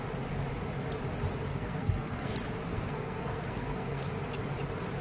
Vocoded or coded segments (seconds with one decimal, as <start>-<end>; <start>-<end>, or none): 1.5-2.3; 2.7-4.1